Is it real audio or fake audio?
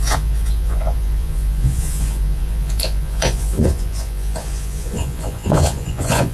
fake